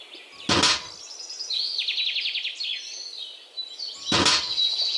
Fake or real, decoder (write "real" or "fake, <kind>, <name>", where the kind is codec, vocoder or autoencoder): real